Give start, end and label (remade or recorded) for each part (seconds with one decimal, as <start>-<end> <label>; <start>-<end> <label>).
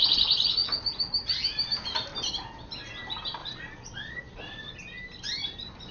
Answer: 0.0-3.4 recorded; 3.4-4.7 remade; 4.7-5.9 recorded